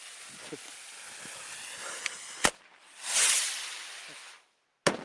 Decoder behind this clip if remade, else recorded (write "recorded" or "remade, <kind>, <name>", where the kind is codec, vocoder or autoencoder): recorded